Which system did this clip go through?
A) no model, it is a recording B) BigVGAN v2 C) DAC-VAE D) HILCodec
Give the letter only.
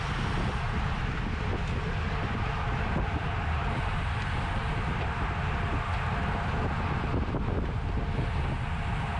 A